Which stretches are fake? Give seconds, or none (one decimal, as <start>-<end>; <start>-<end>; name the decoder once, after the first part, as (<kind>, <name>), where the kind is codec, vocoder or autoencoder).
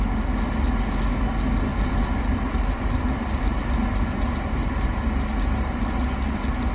1.7-5.7 (vocoder, BigVGAN v2)